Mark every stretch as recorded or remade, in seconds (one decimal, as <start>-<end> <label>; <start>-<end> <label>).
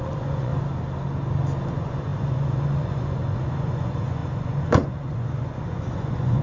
0.0-0.5 remade; 0.5-1.7 recorded; 1.7-6.4 remade